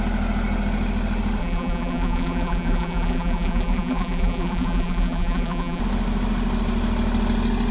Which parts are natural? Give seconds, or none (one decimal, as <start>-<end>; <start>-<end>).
0.0-1.4; 5.8-7.7